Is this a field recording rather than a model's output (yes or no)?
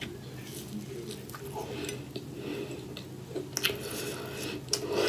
yes